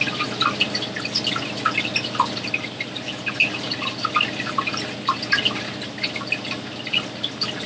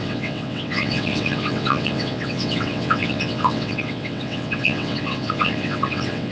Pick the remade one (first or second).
second